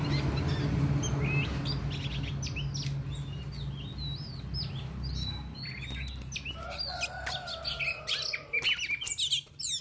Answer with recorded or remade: recorded